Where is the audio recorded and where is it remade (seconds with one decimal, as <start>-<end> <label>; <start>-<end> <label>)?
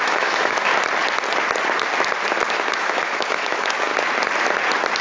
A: 0.0-0.7 remade; 0.7-2.5 recorded; 2.5-3.9 remade; 3.9-5.0 recorded